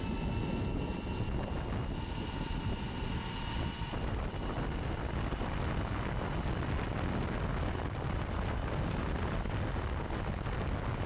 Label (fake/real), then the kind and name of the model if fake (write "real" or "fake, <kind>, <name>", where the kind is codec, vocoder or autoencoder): real